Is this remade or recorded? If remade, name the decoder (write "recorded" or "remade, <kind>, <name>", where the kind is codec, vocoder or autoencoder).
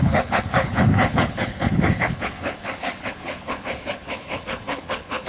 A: remade, codec, HILCodec